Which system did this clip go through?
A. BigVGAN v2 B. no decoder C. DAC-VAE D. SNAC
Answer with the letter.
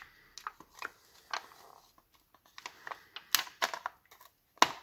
B